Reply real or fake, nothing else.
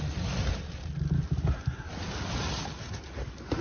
real